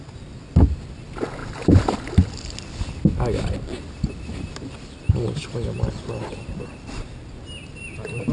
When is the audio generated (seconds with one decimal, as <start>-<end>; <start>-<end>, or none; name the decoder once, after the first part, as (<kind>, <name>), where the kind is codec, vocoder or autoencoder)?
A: none